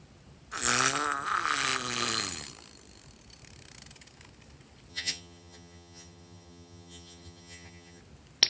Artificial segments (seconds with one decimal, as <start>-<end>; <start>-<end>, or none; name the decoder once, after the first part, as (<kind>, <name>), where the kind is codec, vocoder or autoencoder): 4.9-8.0 (vocoder, HiFi-GAN)